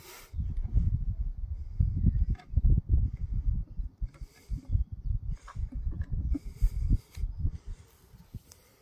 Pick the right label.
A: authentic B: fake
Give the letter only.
B